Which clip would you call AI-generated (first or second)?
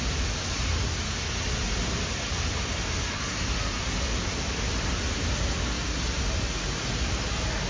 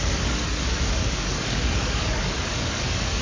second